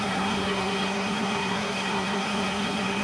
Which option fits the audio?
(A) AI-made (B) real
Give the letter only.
A